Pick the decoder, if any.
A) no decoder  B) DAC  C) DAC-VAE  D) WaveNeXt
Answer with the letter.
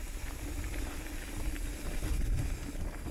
A